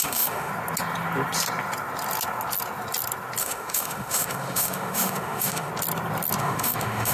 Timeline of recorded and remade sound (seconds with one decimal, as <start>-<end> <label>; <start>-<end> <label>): 0.0-0.5 remade; 0.5-3.4 recorded; 3.4-5.7 remade; 5.7-6.4 recorded; 6.4-7.1 remade